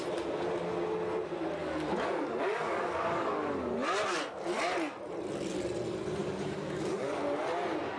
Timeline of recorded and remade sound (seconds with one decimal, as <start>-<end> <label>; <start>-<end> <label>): 0.0-1.6 recorded; 1.6-3.7 remade; 3.7-6.2 recorded; 6.2-7.2 remade; 7.2-8.0 recorded